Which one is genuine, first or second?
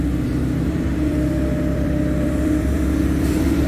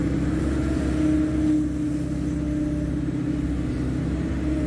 second